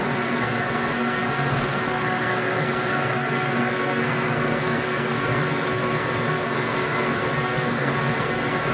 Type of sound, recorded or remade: remade